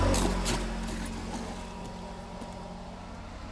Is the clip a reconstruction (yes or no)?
no